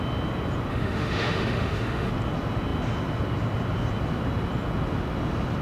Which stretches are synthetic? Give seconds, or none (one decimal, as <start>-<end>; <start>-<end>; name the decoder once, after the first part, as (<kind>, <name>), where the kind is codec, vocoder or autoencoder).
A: 0.7-2.1 (autoencoder, DAC-VAE)